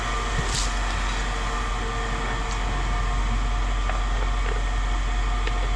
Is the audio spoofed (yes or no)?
no